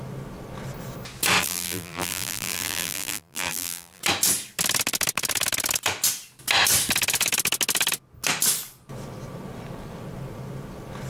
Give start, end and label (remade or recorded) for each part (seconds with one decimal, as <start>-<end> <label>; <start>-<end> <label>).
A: 0.0-1.4 recorded; 1.4-4.0 remade; 4.0-11.1 recorded